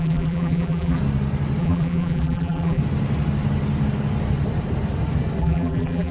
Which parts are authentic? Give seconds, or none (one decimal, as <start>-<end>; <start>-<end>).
1.0-1.6; 2.8-5.4